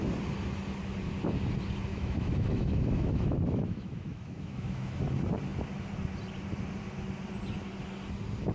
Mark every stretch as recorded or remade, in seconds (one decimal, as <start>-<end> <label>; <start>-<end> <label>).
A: 0.0-1.9 recorded; 1.9-5.0 remade; 5.0-8.5 recorded